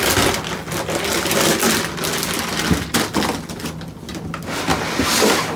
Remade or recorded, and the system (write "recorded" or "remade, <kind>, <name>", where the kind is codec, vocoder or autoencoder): recorded